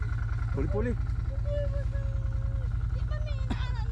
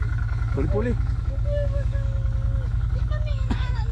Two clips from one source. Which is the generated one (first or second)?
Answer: second